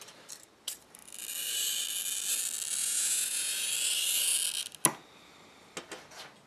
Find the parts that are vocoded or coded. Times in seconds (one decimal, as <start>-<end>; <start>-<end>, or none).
2.8-3.7